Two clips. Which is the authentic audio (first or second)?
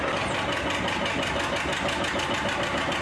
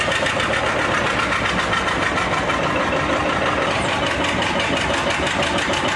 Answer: first